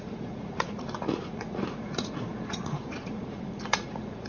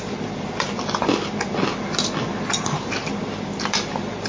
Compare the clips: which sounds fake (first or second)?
first